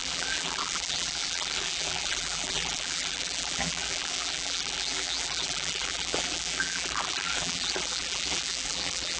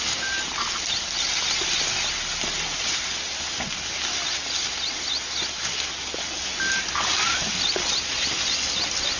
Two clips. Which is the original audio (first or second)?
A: second